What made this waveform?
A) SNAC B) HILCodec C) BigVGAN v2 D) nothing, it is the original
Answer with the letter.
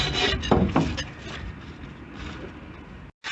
D